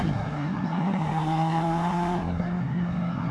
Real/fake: fake